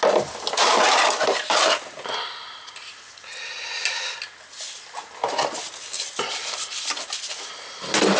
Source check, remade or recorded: recorded